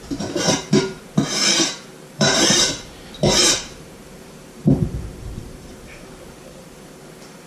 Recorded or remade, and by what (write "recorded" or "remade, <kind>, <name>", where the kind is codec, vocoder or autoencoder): remade, vocoder, BigVGAN v2